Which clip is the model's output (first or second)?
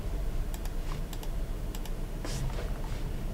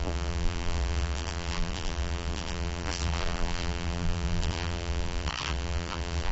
second